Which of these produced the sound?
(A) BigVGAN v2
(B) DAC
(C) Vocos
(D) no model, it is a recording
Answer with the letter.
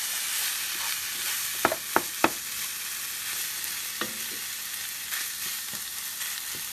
D